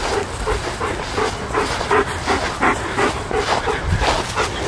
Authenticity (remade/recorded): recorded